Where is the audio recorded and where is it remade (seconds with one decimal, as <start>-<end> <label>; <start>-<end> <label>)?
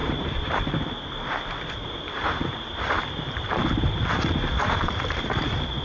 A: 0.0-0.9 remade; 0.9-1.8 recorded; 1.8-5.3 remade; 5.3-5.8 recorded